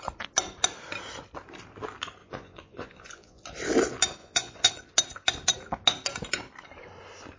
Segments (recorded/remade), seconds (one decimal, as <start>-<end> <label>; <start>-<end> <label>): 0.0-2.2 recorded; 2.2-3.4 remade; 3.4-4.2 recorded; 4.2-4.8 remade; 4.8-7.4 recorded